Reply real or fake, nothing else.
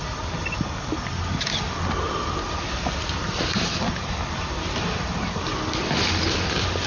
real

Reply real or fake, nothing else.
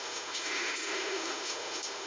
fake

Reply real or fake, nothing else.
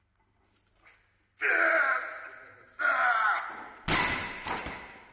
real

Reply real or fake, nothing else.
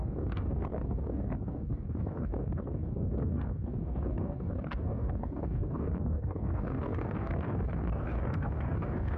fake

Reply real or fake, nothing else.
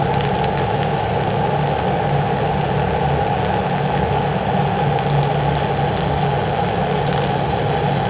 real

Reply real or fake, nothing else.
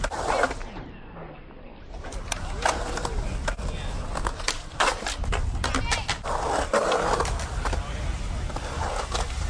real